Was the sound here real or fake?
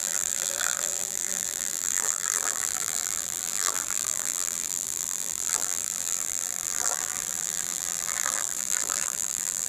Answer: fake